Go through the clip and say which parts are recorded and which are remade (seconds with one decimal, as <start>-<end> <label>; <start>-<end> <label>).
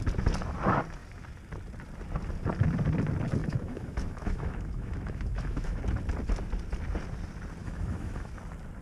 0.0-3.4 recorded; 3.4-5.8 remade; 5.8-7.6 recorded; 7.6-8.3 remade; 8.3-8.8 recorded